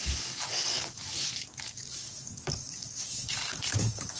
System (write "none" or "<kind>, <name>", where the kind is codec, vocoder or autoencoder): codec, DAC